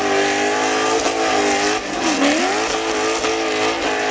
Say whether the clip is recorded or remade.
recorded